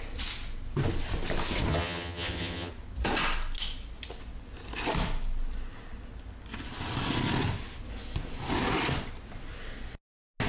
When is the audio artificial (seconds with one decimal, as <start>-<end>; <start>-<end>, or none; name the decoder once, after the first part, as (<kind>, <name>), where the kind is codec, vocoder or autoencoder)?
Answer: 1.7-2.7 (vocoder, HiFi-GAN)